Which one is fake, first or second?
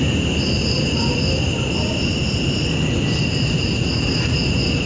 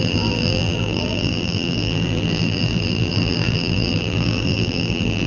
second